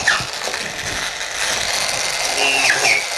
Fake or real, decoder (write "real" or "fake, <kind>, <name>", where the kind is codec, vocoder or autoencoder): real